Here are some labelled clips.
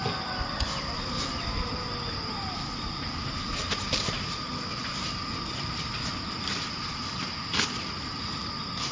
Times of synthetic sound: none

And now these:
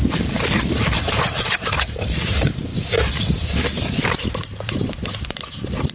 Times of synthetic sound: 0.0-2.7 (vocoder, BigVGAN v2); 4.0-5.9

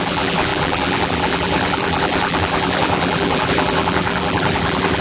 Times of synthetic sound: 0.0-5.0 (vocoder, BigVGAN v2)

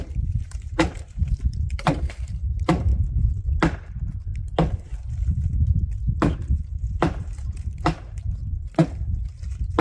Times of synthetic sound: 0.0-2.9 (vocoder, BigVGAN v2); 6.5-8.4